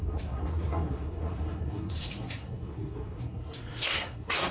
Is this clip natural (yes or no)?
no